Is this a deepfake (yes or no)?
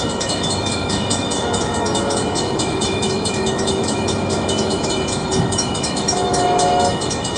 yes